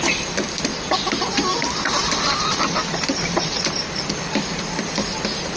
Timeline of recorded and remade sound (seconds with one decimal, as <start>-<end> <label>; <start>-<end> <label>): 0.0-1.5 remade; 1.5-2.0 recorded; 2.0-5.6 remade

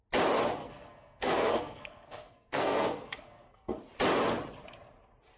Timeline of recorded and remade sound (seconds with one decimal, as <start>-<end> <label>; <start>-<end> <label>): 0.0-0.6 recorded; 0.6-3.8 remade; 3.8-5.4 recorded

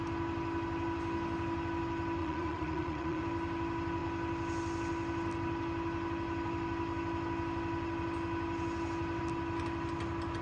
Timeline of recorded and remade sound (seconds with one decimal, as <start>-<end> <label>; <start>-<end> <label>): 0.0-2.2 recorded; 2.2-3.2 remade; 3.2-10.4 recorded